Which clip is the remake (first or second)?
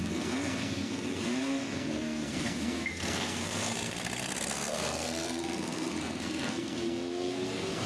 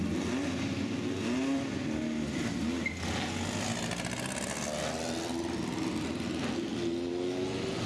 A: first